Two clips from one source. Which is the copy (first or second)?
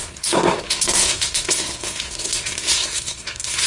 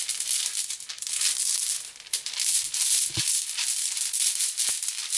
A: first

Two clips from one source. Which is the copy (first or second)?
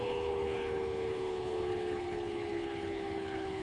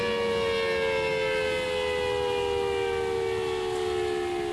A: first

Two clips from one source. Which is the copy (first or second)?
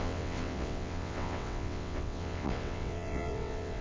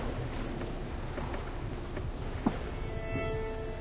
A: first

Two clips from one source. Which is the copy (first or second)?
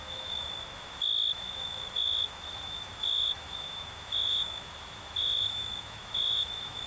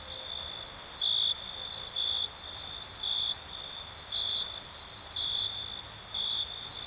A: first